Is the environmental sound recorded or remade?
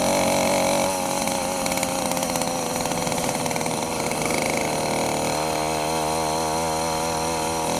recorded